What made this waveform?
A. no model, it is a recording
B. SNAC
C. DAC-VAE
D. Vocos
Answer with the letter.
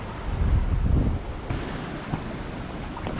A